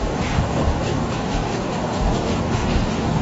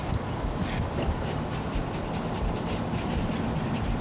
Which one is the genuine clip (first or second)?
second